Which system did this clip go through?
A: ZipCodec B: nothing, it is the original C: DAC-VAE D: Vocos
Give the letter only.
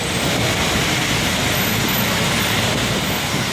B